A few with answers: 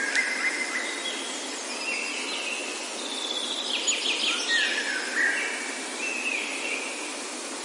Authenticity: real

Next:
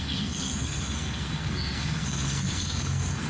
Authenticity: fake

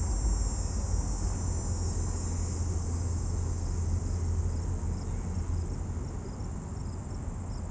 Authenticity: real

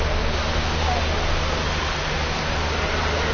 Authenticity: real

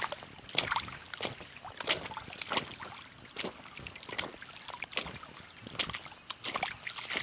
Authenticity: real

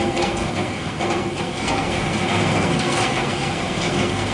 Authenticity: fake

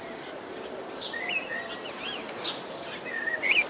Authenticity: real